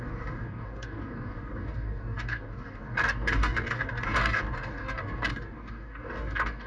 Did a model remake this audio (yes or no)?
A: yes